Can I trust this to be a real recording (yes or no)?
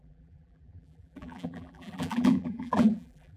no